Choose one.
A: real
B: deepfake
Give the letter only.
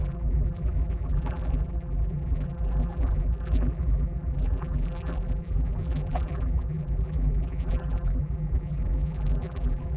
B